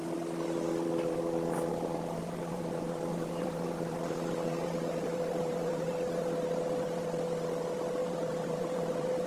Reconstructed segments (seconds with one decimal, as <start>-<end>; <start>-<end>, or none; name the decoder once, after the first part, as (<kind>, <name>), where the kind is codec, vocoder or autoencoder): 3.1-5.9 (vocoder, BigVGAN v2); 8.0-9.3